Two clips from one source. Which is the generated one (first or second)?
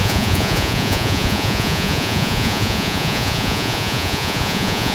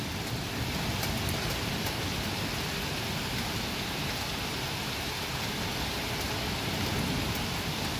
first